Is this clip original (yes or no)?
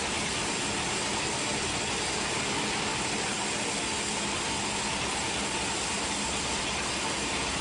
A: yes